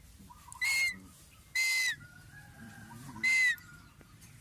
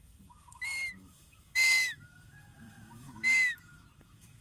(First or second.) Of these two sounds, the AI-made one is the second